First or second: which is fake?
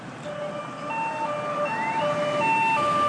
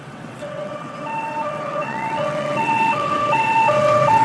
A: second